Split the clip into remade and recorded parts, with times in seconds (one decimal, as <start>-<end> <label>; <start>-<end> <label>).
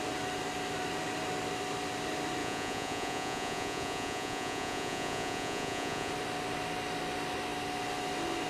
0.0-2.4 recorded; 2.4-6.1 remade; 6.1-8.5 recorded